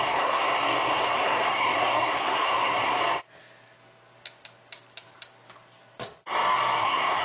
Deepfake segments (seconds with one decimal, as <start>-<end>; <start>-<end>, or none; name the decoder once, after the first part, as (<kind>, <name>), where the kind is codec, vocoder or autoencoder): 0.0-0.4 (codec, SNAC); 0.9-3.0; 6.8-7.2